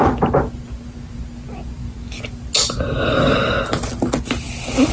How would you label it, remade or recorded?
recorded